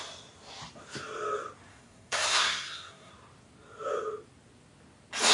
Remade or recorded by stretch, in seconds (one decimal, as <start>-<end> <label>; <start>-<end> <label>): 0.0-1.7 recorded; 1.7-3.1 remade; 3.1-5.3 recorded